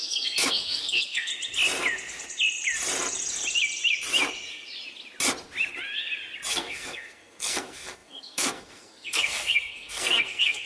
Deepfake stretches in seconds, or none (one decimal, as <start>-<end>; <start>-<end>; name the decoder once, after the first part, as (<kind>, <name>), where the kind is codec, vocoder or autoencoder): 0.0-1.3 (codec, SNAC); 6.5-10.7